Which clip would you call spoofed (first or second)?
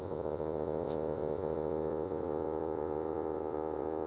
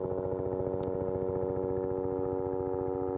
first